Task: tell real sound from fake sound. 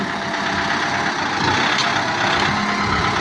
real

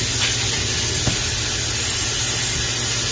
real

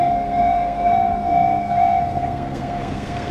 fake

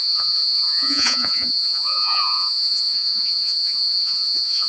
fake